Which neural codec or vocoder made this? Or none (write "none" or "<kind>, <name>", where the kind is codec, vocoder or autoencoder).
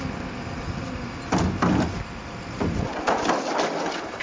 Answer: none